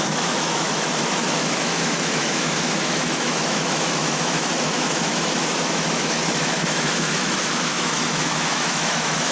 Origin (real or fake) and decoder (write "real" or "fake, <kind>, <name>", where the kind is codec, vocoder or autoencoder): fake, autoencoder, DAC-VAE